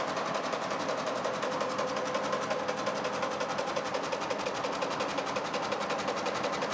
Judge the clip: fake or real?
real